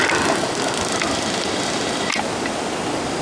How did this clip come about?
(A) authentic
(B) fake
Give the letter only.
A